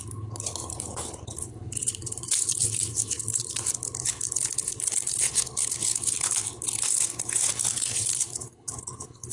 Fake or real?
fake